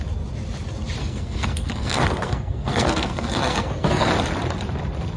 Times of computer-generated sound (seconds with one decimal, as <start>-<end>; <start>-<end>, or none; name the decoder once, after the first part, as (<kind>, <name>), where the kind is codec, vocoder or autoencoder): 1.0-4.1 (codec, SNAC)